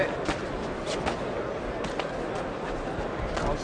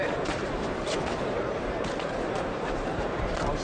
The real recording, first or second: first